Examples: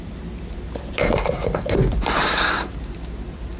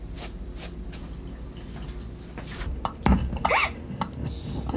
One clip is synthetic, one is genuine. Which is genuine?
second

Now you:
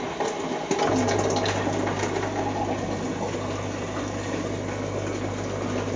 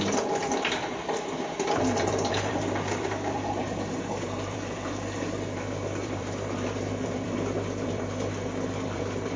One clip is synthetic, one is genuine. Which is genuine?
first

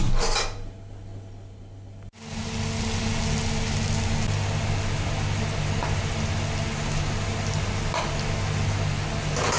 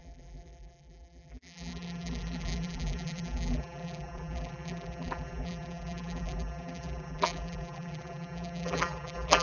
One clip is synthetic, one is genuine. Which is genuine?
first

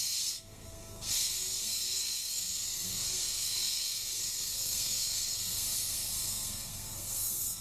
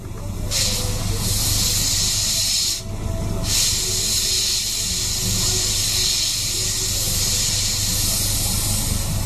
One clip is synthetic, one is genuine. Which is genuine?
second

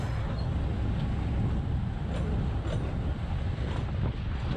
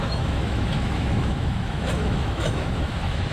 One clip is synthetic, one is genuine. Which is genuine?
first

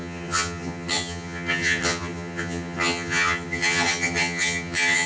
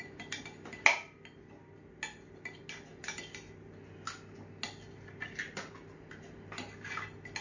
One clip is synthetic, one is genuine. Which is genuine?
second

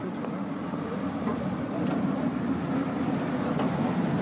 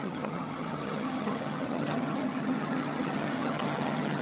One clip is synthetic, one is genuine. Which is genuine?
first